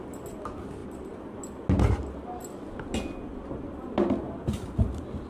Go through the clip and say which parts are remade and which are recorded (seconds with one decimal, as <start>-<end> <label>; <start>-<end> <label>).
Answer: 0.0-5.3 recorded